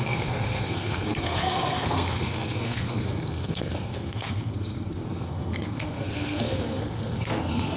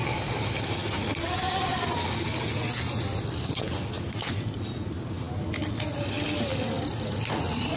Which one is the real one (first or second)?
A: second